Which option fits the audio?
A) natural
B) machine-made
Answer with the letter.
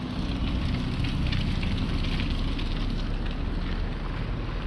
A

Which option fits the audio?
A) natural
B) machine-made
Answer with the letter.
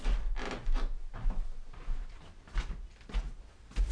A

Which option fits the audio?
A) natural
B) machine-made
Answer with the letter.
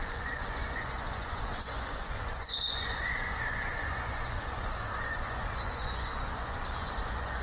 B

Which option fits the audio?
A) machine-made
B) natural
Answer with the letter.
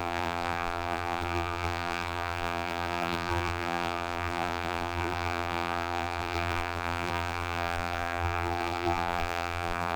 A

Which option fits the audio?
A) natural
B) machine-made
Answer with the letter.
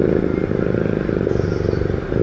A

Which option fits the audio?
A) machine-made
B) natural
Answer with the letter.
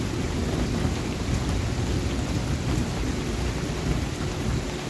B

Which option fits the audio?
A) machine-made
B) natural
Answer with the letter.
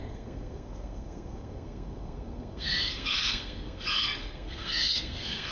A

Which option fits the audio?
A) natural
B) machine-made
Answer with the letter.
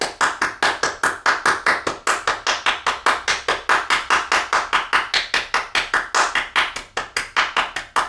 A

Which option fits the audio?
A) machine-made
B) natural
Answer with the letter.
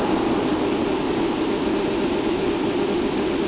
B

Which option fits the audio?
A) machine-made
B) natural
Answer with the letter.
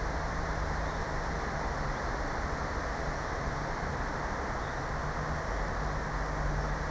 B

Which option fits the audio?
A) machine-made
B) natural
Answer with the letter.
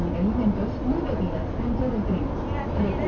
B